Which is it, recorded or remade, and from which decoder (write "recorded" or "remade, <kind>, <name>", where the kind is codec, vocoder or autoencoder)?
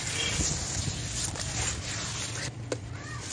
recorded